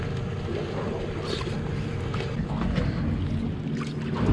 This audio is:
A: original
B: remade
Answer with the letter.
A